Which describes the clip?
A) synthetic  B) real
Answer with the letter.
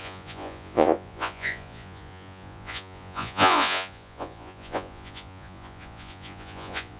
A